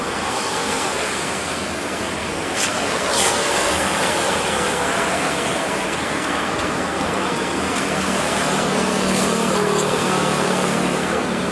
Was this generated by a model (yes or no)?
yes